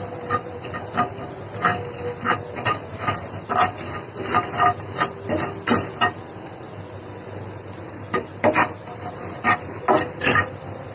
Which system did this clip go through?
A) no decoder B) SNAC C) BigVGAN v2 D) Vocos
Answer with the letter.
A